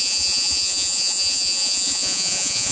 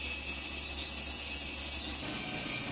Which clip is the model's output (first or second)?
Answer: first